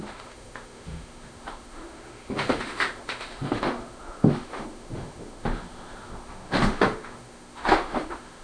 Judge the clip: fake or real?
fake